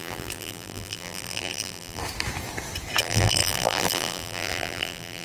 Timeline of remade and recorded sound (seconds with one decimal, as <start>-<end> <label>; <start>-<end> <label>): 0.0-2.0 remade; 2.0-3.0 recorded; 3.0-5.2 remade